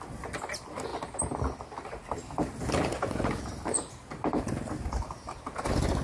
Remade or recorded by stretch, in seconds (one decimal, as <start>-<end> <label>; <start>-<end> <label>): 0.0-6.0 recorded

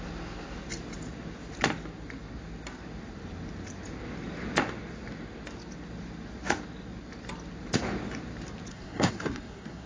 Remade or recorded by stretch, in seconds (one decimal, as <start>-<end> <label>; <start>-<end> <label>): 0.0-8.7 recorded; 8.7-9.9 remade

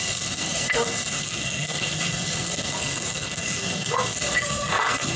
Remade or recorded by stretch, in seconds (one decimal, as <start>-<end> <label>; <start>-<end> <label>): 0.0-5.2 remade

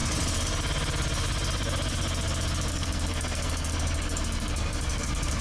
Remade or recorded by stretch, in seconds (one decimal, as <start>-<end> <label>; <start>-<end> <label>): 0.0-2.7 recorded; 2.7-5.4 remade

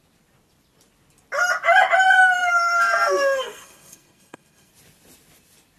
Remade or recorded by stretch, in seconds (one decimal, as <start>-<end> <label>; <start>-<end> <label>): 0.0-2.4 recorded; 2.4-4.7 remade; 4.7-5.8 recorded

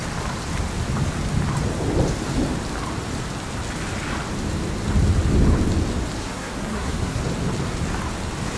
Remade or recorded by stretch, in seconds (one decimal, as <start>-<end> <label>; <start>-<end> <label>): 0.0-6.2 recorded; 6.2-7.2 remade; 7.2-8.6 recorded

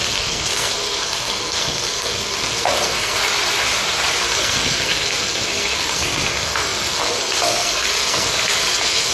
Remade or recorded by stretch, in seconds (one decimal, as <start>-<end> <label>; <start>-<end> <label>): 0.0-3.2 remade; 3.2-4.2 recorded; 4.2-9.1 remade